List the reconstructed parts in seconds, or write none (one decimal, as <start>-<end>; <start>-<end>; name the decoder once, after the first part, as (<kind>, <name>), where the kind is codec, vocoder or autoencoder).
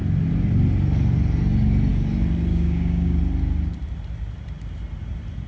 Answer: 2.5-3.2 (codec, DAC)